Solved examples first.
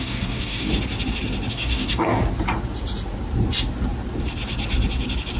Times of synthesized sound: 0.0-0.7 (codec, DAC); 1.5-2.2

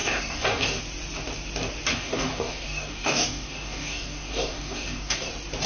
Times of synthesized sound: 0.0-0.8 (codec, DAC); 1.9-5.3

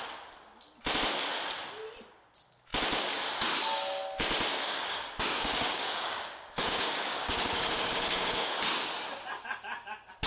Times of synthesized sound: 4.5-8.5 (codec, DAC)

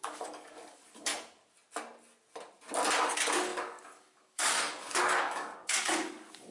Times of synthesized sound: 0.0-1.1 (codec, DAC); 3.0-6.5

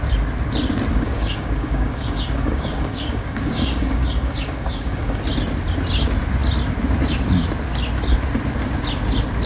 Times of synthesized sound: 0.9-5.2 (codec, DAC)

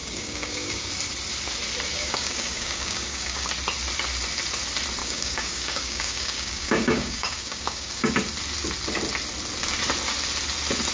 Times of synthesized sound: 0.0-0.9 (codec, DAC); 1.9-3.5; 5.0-8.1